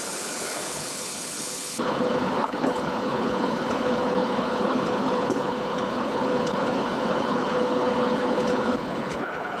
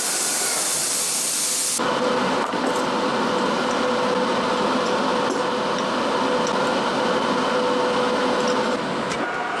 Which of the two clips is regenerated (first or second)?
first